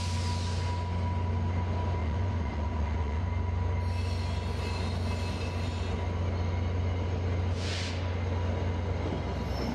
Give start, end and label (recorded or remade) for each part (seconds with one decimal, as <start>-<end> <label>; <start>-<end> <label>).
0.0-2.0 recorded; 2.0-3.2 remade; 3.2-9.7 recorded